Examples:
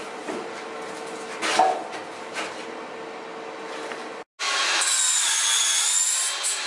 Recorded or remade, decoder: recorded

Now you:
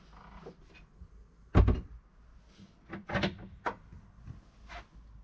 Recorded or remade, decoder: recorded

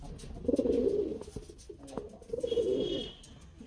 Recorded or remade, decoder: recorded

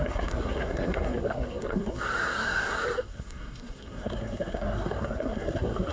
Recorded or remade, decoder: remade, codec, SNAC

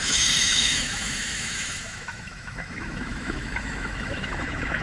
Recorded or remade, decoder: remade, autoencoder, DAC-VAE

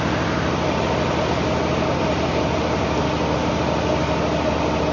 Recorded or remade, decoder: recorded